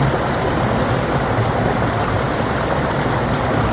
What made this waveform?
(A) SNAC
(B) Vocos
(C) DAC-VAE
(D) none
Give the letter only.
D